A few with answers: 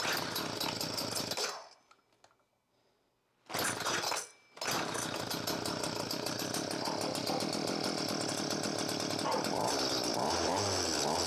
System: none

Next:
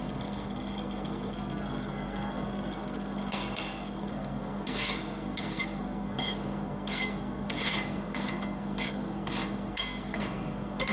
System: codec, SNAC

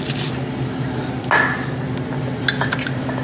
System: none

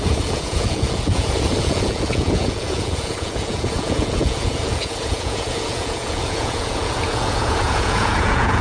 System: vocoder, Vocos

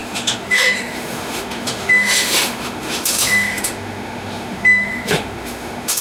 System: autoencoder, DAC-VAE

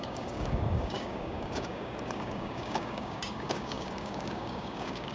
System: codec, DAC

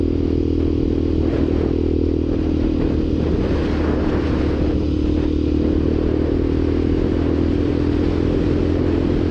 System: none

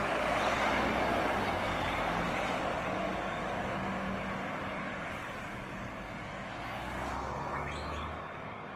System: codec, DAC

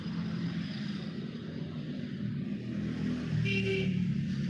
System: none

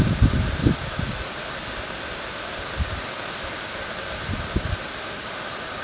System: none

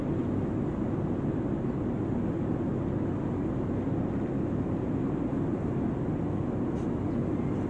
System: none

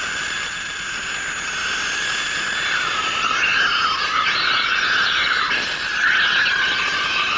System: none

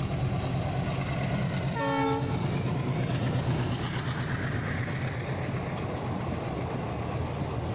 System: none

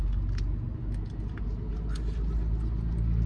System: none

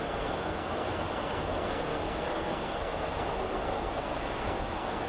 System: codec, SNAC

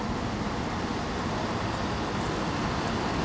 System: none